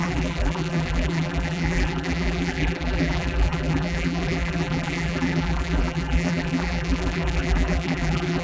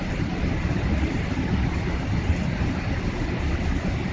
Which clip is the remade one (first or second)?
first